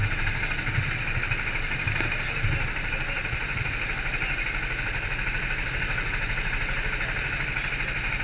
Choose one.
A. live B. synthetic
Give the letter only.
A